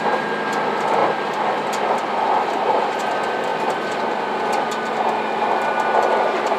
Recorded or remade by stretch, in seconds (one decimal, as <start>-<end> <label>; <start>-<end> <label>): 0.0-6.6 recorded